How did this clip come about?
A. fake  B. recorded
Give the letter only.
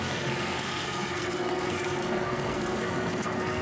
A